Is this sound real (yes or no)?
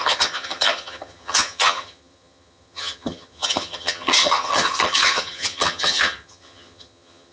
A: no